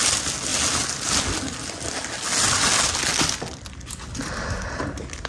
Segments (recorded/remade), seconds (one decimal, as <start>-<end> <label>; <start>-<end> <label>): 0.0-5.3 recorded